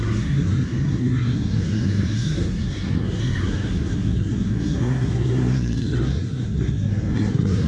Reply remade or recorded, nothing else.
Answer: remade